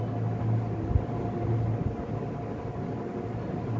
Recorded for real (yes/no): yes